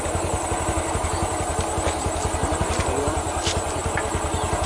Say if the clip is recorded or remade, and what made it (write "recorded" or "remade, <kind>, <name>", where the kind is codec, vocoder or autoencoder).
recorded